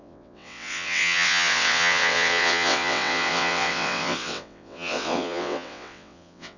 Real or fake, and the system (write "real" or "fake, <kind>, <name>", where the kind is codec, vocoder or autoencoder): fake, vocoder, WaveNeXt